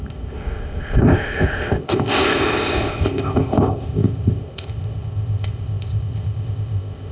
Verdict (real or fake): fake